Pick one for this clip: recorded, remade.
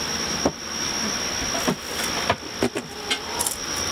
recorded